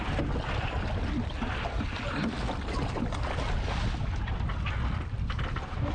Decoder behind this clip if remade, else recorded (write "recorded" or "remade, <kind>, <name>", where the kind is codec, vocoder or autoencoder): recorded